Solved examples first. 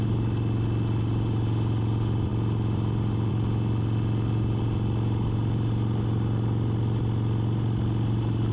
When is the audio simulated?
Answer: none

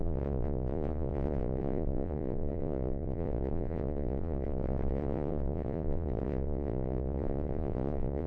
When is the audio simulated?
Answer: 0.0-8.3 (vocoder, Vocos)

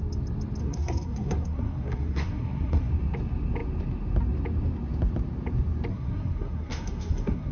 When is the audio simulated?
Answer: 0.6-2.9 (codec, SNAC); 5.9-7.5

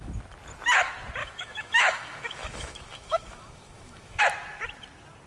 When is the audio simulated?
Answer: 1.2-4.2 (autoencoder, DAC-VAE)

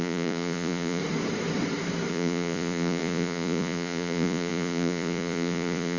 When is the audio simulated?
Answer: 0.0-1.0 (vocoder, Vocos); 2.1-6.0

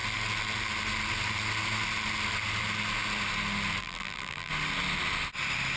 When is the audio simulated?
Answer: 3.8-4.5 (vocoder, BigVGAN v2)